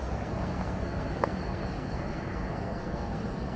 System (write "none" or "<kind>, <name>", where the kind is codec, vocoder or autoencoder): codec, SNAC